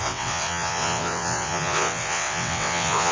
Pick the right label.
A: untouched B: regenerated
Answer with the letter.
B